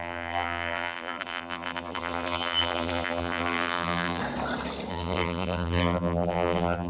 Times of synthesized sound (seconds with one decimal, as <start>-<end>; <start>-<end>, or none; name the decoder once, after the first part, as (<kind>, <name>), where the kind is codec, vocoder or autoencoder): 0.0-4.2 (vocoder, BigVGAN v2); 4.9-6.9